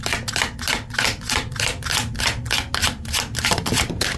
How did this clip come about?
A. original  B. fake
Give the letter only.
A